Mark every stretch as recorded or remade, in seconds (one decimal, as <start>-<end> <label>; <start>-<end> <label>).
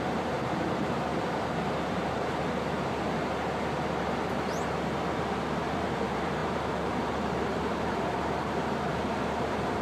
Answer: 0.0-1.1 remade; 1.1-5.5 recorded; 5.5-9.8 remade